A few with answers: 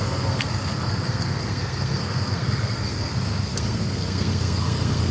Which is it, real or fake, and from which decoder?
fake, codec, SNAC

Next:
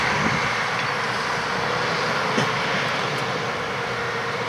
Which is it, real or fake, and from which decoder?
real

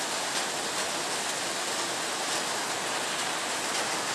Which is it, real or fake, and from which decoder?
real